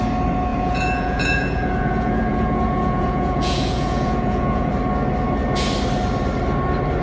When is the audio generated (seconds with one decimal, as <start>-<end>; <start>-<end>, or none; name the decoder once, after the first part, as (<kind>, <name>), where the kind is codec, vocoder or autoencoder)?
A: 0.5-4.7 (vocoder, Vocos)